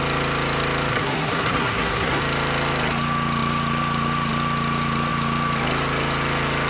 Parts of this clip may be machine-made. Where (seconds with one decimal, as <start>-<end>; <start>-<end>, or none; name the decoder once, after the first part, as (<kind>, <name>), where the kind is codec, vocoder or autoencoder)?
0.9-2.2 (codec, SNAC)